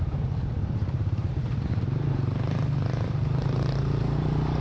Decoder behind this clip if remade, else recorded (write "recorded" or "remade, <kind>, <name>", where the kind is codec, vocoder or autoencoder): remade, vocoder, BigVGAN v2